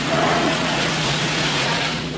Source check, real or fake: fake